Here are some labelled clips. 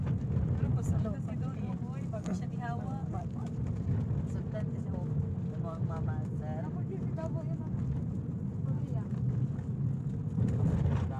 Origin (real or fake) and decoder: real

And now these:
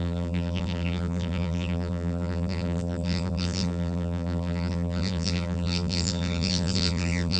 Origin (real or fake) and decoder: fake, vocoder, BigVGAN v2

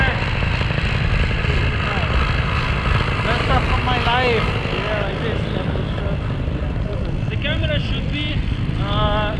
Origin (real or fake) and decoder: real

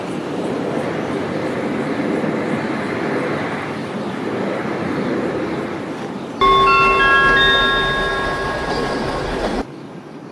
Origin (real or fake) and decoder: real